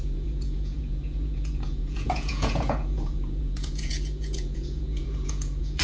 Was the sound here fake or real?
fake